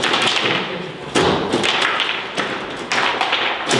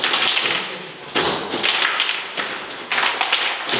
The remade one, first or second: first